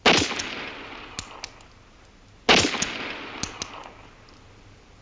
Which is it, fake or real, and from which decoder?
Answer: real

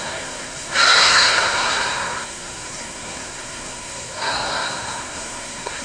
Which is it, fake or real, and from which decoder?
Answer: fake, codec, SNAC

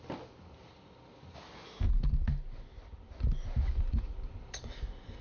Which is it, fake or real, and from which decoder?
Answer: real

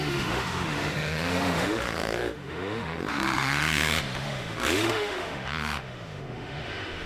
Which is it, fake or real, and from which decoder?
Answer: fake, autoencoder, DAC-VAE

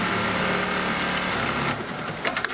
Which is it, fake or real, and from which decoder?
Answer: real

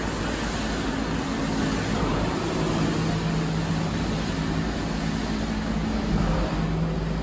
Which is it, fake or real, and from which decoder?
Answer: real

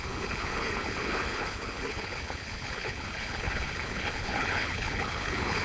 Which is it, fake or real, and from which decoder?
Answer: fake, codec, HILCodec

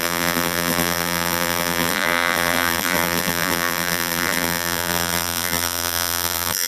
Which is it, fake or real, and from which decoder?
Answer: fake, vocoder, BigVGAN v2